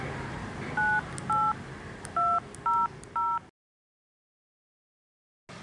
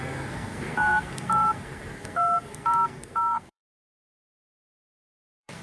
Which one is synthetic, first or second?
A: second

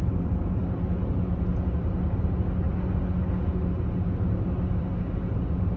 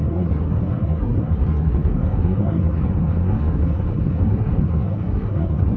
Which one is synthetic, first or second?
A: second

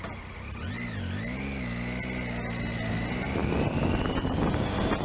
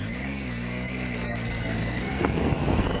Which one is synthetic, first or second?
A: second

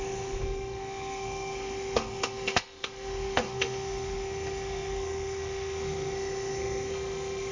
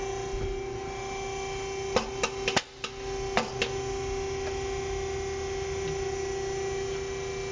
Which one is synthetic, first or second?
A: first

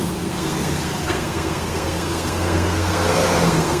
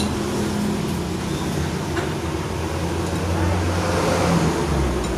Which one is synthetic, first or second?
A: first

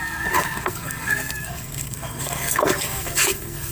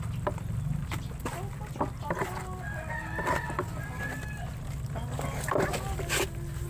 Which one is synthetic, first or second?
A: first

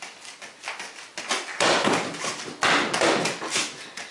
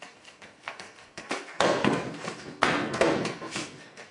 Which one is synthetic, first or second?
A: second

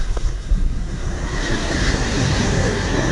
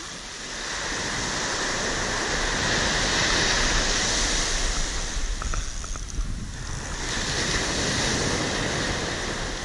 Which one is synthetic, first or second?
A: first